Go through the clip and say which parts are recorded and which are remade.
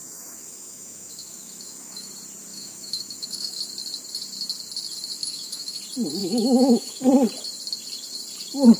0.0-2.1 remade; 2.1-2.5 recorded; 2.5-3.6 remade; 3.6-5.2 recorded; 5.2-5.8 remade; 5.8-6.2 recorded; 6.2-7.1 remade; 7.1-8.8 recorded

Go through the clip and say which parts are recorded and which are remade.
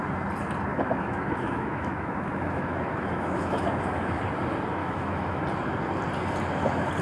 0.0-0.7 recorded; 0.7-4.2 remade; 4.2-4.8 recorded; 4.8-5.4 remade; 5.4-7.0 recorded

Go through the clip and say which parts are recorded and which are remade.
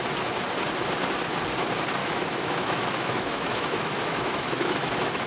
0.0-2.0 recorded; 2.0-5.3 remade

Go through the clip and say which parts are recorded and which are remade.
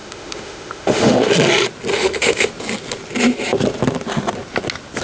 0.0-1.3 remade; 1.3-1.9 recorded; 1.9-2.5 remade; 2.5-5.0 recorded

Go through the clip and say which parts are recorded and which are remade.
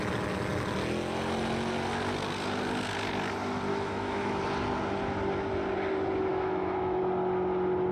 0.0-3.7 recorded; 3.7-4.4 remade; 4.4-6.3 recorded; 6.3-7.0 remade; 7.0-7.9 recorded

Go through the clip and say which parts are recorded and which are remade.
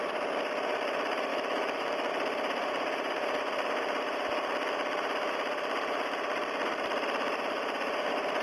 0.0-1.3 recorded; 1.3-2.1 remade; 2.1-8.4 recorded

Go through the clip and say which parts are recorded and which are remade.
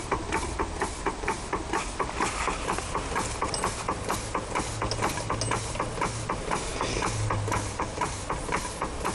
0.0-9.1 recorded